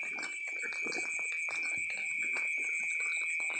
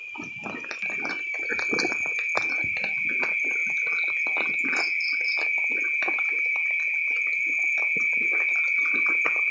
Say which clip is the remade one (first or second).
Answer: second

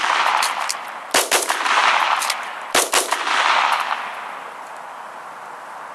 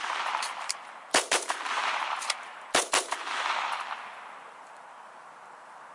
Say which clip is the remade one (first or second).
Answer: second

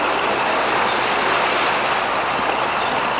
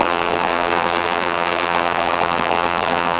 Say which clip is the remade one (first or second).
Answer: second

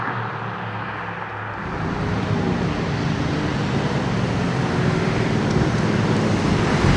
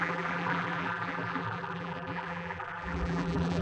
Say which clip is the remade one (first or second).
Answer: second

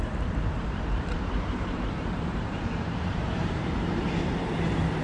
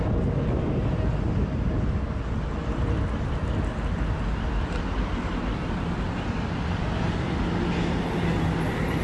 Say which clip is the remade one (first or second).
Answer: first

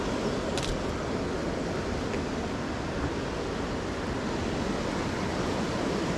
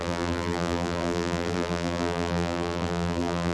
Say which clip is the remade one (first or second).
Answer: second